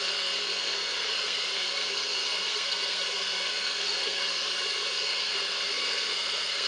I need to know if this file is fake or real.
fake